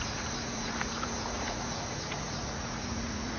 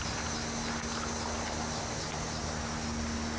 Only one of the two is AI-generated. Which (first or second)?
first